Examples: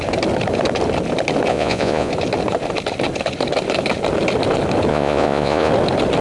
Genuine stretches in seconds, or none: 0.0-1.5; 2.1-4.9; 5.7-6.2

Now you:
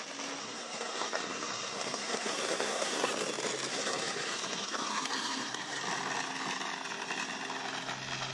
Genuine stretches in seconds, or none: 0.0-0.4; 3.1-3.7; 5.8-8.3

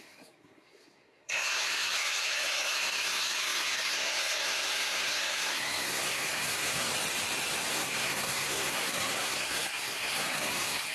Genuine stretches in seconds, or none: 6.9-7.7

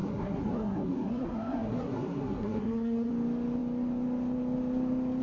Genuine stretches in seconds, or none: 3.1-5.2

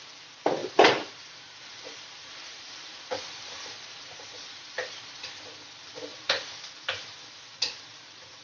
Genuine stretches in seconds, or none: 0.0-0.6; 5.3-6.1; 6.6-8.4

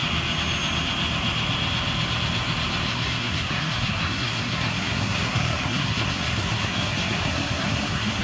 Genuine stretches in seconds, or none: 0.0-2.9

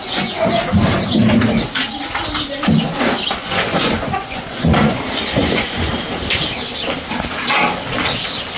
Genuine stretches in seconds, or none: 0.5-3.4; 5.0-5.4; 5.9-8.6